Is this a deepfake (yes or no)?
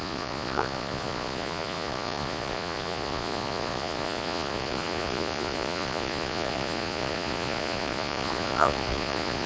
yes